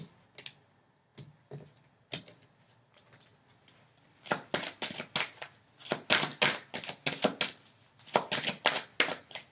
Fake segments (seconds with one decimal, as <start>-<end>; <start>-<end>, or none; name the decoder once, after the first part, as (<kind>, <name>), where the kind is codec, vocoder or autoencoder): none